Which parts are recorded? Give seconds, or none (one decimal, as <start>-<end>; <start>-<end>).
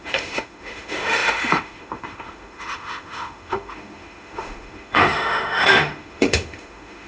none